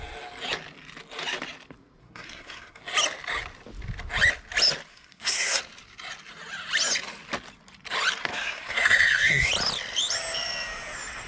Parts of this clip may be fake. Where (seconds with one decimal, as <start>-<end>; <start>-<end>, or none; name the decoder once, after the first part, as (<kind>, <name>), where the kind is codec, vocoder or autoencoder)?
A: 2.0-2.8 (codec, SNAC); 4.9-5.6; 8.3-9.5